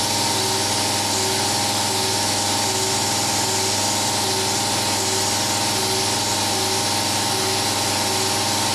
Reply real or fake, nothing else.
real